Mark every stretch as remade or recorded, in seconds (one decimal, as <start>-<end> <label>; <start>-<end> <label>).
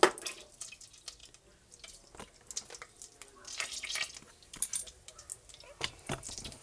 0.0-6.6 recorded